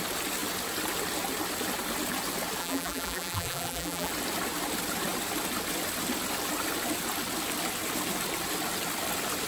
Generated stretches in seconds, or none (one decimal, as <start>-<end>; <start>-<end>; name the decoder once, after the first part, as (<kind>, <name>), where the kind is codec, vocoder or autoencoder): 2.6-4.1 (vocoder, BigVGAN v2)